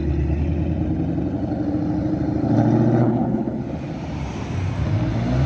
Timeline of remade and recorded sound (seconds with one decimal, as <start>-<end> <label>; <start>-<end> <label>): 0.0-3.0 recorded; 3.0-3.6 remade; 3.6-5.5 recorded